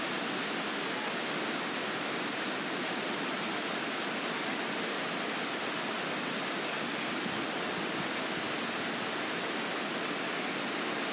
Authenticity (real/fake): real